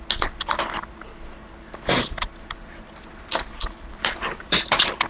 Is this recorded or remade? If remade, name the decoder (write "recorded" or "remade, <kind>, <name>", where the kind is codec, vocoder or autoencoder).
recorded